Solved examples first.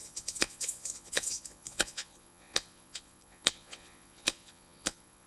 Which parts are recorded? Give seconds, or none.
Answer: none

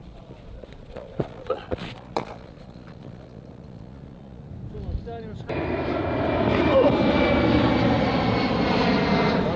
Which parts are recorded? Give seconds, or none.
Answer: 4.5-9.6